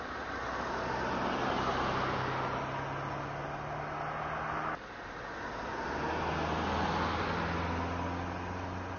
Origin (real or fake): real